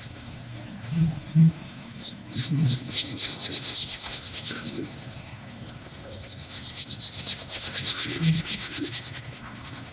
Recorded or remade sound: remade